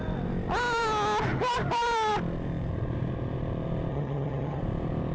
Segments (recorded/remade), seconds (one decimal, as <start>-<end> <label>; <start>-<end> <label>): 0.0-3.9 recorded; 3.9-4.6 remade; 4.6-5.1 recorded